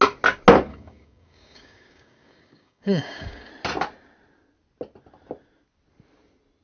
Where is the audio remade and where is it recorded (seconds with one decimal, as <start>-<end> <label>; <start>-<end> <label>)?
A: 0.0-0.7 recorded; 0.7-3.5 remade; 3.5-6.6 recorded